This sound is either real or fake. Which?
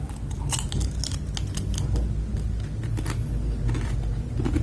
real